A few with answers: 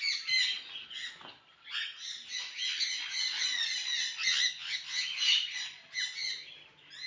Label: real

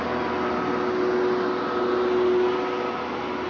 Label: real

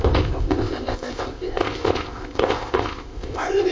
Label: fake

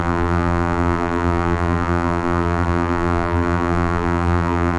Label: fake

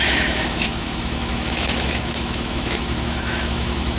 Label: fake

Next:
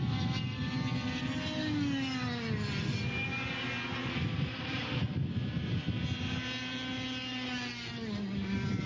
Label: real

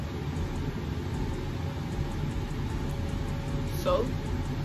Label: real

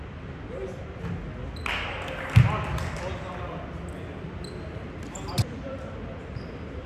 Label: real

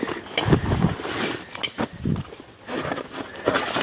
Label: real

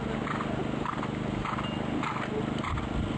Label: real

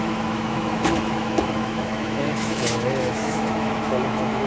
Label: fake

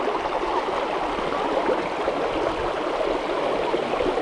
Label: real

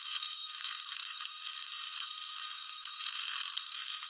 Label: fake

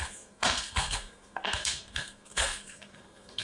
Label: fake